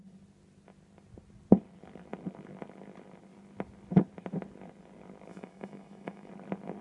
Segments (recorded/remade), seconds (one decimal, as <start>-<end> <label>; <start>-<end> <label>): 0.0-5.3 recorded; 5.3-6.3 remade; 6.3-6.8 recorded